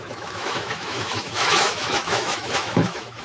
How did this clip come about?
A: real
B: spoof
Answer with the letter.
B